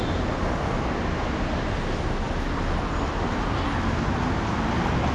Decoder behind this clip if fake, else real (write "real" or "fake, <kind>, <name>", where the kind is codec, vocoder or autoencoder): real